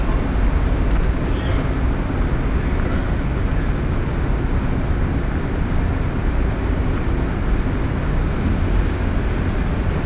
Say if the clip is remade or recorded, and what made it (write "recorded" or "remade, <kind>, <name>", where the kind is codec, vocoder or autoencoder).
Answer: recorded